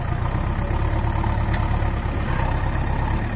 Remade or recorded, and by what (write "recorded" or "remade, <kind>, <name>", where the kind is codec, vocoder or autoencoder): recorded